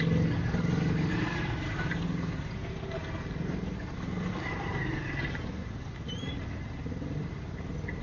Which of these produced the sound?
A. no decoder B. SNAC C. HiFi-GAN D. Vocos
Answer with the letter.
A